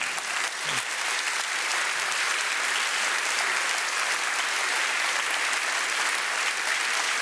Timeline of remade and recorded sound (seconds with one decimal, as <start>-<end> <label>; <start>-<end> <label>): 0.0-1.7 recorded; 1.7-5.8 remade; 5.8-7.2 recorded